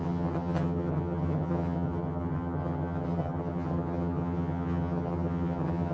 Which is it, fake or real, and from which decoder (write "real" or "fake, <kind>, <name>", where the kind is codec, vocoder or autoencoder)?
fake, vocoder, HiFi-GAN